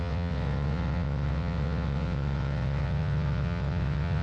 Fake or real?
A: fake